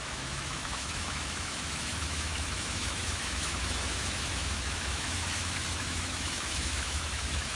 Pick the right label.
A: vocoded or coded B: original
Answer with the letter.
A